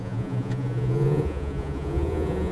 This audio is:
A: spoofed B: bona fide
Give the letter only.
A